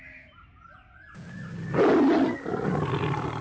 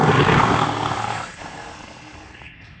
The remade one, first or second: second